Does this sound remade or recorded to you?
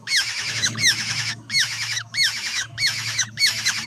remade